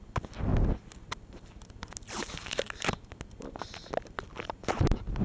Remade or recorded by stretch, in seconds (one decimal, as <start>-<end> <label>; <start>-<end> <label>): 0.0-5.2 recorded